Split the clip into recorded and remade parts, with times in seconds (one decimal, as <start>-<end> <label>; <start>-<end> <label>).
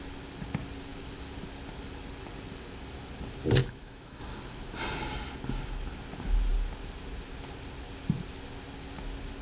0.0-3.6 recorded; 3.6-4.2 remade; 4.2-9.4 recorded